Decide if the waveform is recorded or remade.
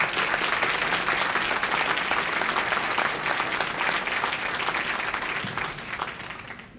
recorded